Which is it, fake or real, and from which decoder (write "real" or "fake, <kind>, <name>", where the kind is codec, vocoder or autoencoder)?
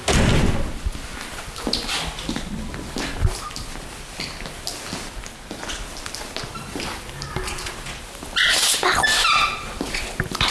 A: real